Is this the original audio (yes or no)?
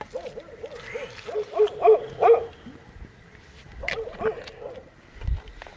yes